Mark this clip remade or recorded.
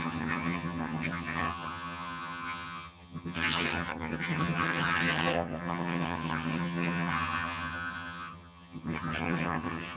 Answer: remade